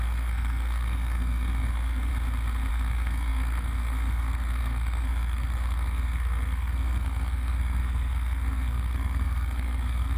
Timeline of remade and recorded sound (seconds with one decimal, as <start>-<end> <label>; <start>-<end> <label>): 0.0-2.1 remade; 2.1-2.7 recorded; 2.7-10.2 remade